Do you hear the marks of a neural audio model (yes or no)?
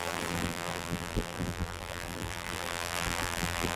yes